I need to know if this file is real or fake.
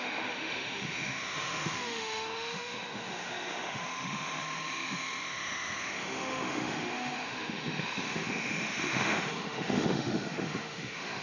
fake